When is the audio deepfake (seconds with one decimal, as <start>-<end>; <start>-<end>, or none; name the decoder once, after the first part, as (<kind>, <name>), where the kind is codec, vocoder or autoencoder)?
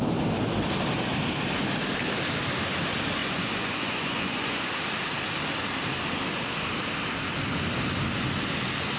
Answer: 3.2-4.7 (vocoder, Vocos)